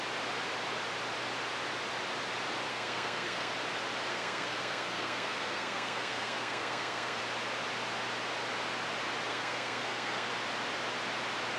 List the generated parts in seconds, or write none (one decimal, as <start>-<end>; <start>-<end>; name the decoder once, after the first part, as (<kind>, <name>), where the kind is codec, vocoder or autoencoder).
2.7-3.5 (codec, SNAC); 4.1-7.2; 9.3-10.3